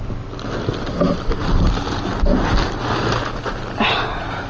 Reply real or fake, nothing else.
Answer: real